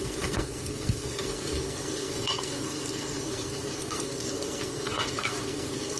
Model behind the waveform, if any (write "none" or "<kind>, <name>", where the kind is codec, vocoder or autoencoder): codec, SNAC